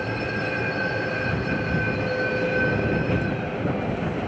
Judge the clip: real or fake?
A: real